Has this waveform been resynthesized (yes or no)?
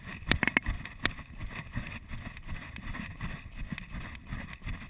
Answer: no